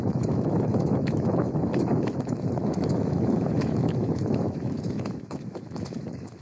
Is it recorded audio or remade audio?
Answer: remade